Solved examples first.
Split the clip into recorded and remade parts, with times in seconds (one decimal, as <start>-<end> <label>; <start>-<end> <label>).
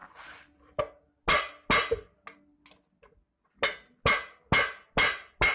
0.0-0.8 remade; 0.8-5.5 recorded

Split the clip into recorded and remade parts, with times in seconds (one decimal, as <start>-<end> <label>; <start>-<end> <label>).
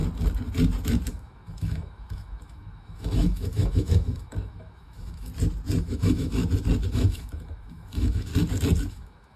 0.0-1.1 recorded; 1.1-5.3 remade; 5.3-5.8 recorded; 5.8-6.4 remade; 6.4-6.9 recorded; 6.9-8.3 remade; 8.3-8.9 recorded; 8.9-9.4 remade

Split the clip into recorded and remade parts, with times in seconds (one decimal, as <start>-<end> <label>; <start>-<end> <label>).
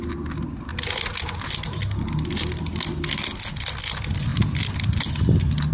0.0-5.7 recorded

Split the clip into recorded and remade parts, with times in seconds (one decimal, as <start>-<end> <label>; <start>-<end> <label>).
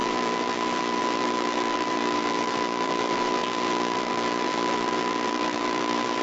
0.0-6.2 remade